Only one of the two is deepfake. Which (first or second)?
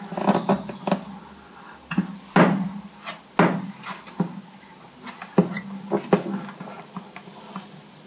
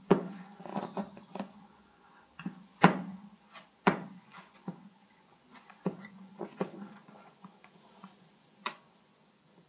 second